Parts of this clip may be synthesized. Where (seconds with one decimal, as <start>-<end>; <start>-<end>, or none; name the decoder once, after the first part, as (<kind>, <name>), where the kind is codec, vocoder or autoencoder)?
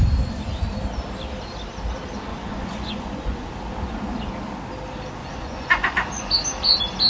2.3-3.5 (vocoder, Vocos); 5.2-6.3